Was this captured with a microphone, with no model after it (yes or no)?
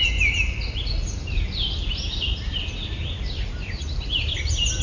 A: yes